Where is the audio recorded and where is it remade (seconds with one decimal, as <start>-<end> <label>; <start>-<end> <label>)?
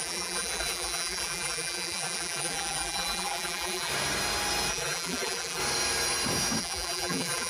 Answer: 0.0-3.9 remade; 3.9-4.7 recorded; 4.7-5.6 remade; 5.6-6.6 recorded; 6.6-7.5 remade